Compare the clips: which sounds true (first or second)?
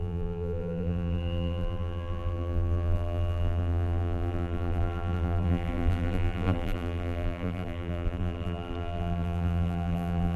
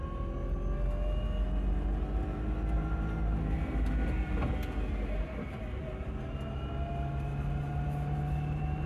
second